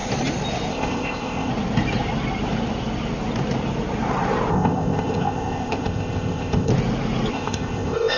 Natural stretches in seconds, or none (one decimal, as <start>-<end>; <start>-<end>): 0.0-0.7; 1.5-4.5; 6.7-7.3